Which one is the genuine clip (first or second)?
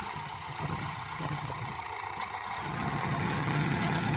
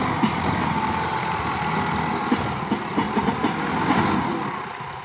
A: second